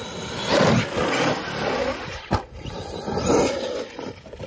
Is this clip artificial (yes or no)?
no